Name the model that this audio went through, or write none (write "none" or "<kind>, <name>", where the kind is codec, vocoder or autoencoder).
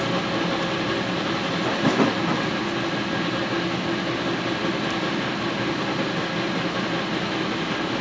none